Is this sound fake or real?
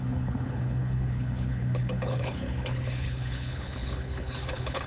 fake